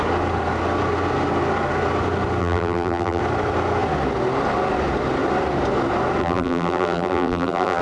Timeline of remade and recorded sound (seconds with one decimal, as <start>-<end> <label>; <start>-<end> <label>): 0.0-2.4 recorded; 2.4-3.2 remade; 3.2-6.2 recorded; 6.2-7.8 remade